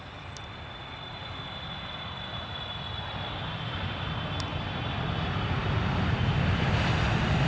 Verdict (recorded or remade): recorded